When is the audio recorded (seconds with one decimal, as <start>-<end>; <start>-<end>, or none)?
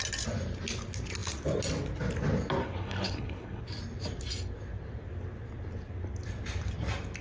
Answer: 0.0-2.6; 3.6-7.2